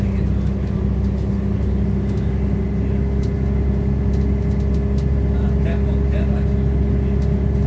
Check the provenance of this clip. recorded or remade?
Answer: recorded